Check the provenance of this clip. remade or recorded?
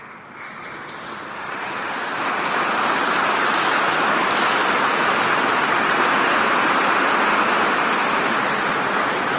recorded